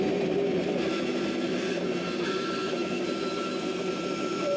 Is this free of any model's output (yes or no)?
yes